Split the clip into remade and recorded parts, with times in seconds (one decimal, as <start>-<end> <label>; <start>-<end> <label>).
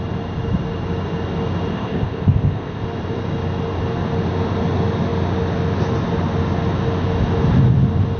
0.0-1.7 recorded; 1.7-2.8 remade; 2.8-8.2 recorded